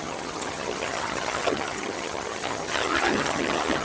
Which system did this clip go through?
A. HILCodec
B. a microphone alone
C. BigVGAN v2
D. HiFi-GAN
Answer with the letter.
D